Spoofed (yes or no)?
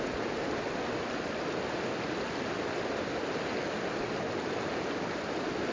no